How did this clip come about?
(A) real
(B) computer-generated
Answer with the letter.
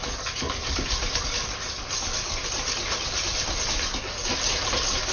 A